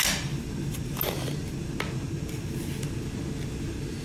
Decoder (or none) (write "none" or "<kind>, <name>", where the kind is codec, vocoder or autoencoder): none